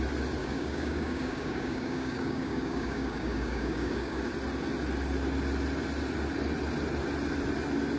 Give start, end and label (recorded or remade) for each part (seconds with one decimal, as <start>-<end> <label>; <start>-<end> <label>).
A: 0.0-0.4 recorded; 0.4-4.3 remade; 4.3-8.0 recorded